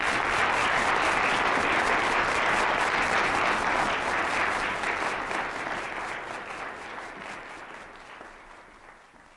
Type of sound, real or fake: real